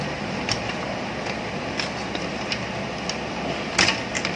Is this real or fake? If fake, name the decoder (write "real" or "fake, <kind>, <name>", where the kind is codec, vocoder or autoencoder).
real